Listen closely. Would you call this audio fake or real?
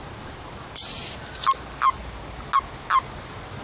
real